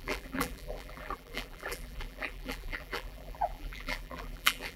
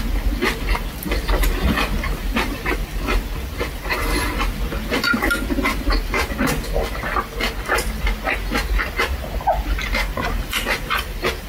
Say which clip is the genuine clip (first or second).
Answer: second